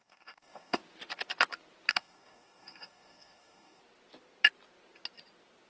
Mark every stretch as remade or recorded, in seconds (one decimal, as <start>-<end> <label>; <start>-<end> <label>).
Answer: 0.0-0.8 remade; 0.8-1.9 recorded; 1.9-3.8 remade; 3.8-5.7 recorded